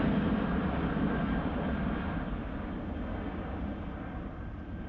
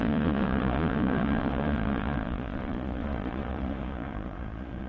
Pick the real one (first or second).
first